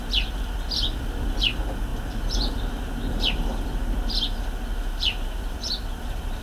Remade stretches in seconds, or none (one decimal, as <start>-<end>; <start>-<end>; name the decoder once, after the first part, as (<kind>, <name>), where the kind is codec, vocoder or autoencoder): none